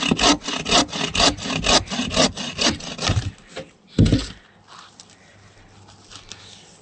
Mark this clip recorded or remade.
recorded